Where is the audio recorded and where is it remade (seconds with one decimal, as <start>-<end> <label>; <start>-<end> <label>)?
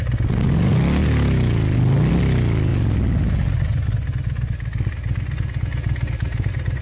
0.0-6.8 recorded